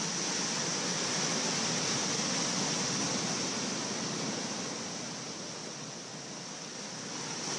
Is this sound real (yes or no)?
yes